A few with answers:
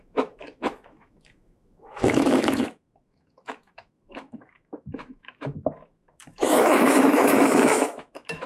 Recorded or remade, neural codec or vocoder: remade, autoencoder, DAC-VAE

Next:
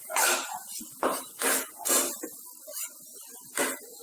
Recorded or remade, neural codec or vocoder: recorded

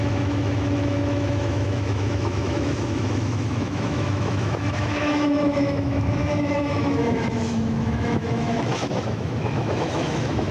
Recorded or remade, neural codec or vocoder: remade, autoencoder, DAC-VAE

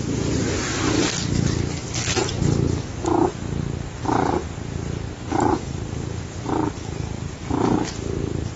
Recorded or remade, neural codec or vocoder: recorded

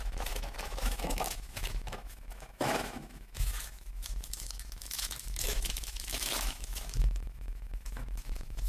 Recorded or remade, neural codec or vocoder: remade, autoencoder, DAC-VAE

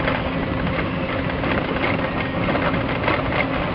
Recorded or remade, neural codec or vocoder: recorded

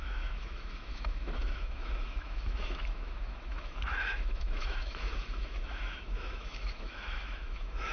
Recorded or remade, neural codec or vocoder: remade, autoencoder, DAC-VAE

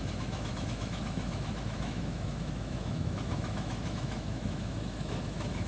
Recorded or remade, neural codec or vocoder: remade, autoencoder, DAC-VAE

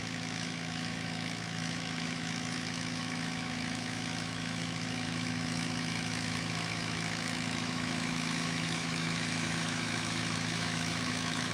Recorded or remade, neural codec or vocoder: remade, autoencoder, DAC-VAE